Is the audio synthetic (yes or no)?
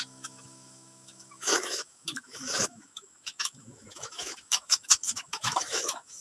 yes